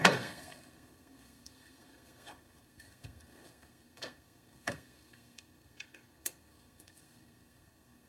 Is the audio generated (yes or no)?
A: yes